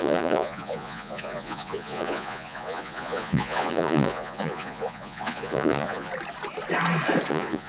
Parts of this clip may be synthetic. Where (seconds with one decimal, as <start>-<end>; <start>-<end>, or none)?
0.0-6.1; 7.3-7.7